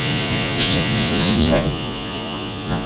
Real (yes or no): no